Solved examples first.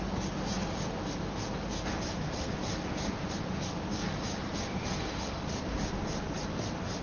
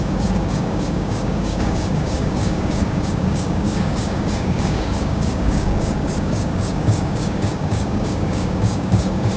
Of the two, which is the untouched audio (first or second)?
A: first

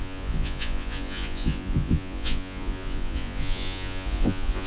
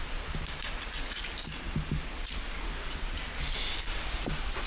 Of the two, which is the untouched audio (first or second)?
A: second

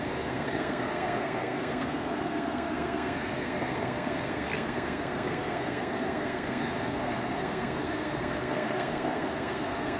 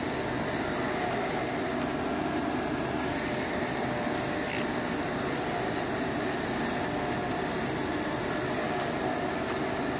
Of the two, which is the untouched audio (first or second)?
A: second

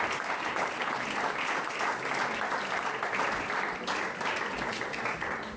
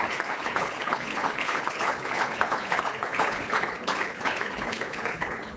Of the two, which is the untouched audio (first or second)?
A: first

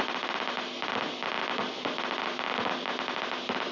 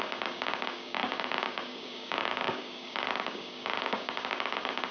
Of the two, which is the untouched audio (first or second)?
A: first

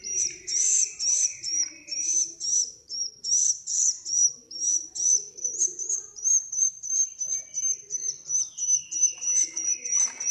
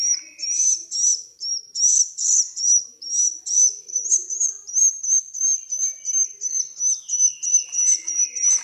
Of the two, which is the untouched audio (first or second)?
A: second